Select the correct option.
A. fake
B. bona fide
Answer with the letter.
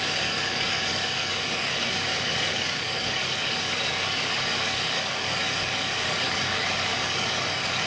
A